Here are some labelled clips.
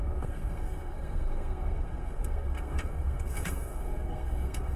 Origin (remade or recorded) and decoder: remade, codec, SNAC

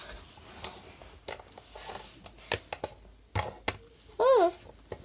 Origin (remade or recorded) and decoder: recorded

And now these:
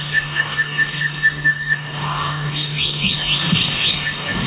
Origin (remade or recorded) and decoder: remade, codec, DAC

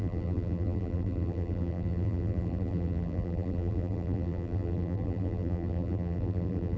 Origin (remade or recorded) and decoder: remade, vocoder, BigVGAN v2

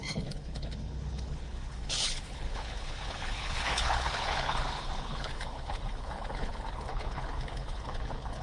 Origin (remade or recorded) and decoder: remade, codec, HILCodec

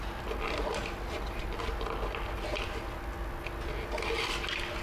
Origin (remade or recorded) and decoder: recorded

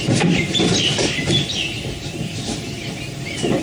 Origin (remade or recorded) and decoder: recorded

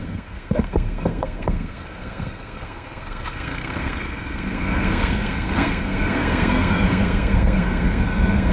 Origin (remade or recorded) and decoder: remade, codec, SNAC